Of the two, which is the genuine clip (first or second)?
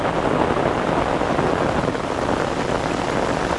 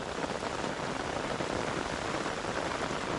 first